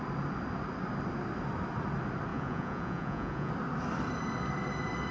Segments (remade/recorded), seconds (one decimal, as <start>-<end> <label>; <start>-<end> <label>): 0.0-2.3 recorded; 2.3-3.5 remade; 3.5-5.1 recorded